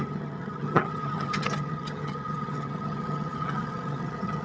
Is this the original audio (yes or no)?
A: no